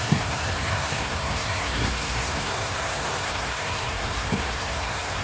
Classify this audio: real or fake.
fake